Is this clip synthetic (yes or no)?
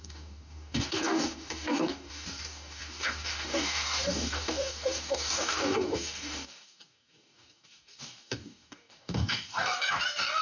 yes